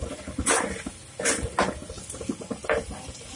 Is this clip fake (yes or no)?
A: no